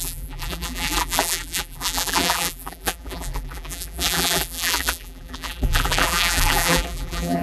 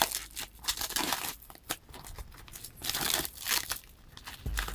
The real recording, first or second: second